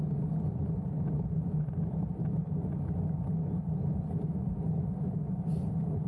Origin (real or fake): real